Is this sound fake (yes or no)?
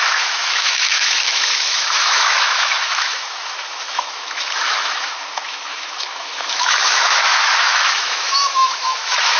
yes